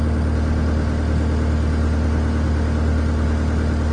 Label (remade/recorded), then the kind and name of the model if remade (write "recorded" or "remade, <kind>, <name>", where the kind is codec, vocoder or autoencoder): recorded